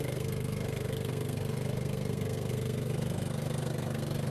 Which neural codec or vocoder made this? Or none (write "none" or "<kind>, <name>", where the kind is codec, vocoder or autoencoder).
codec, SNAC